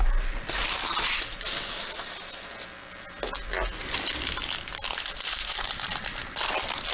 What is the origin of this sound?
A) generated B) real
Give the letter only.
B